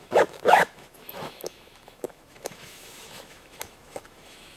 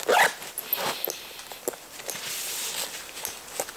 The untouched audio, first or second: second